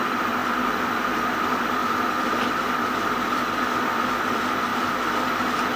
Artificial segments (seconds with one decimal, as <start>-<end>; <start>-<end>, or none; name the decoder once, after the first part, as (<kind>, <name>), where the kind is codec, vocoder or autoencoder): none